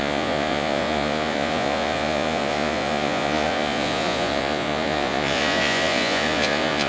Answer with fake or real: fake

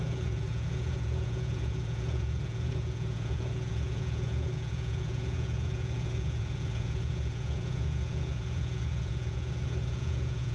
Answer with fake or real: fake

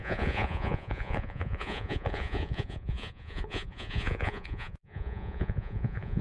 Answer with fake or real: fake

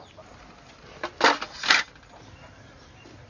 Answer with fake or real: real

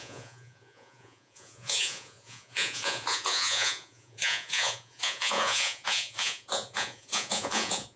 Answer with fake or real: fake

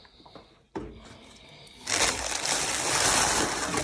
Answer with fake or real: real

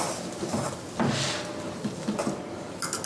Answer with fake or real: real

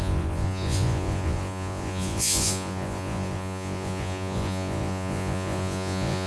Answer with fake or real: fake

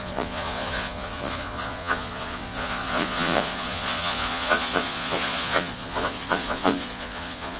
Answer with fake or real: fake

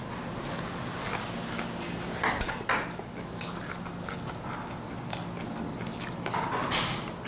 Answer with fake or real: real